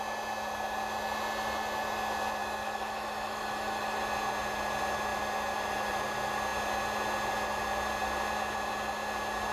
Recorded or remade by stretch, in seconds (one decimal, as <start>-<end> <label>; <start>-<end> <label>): 0.0-2.4 recorded; 2.4-4.0 remade; 4.0-9.5 recorded